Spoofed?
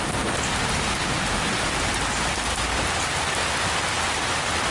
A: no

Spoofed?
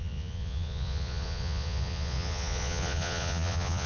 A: yes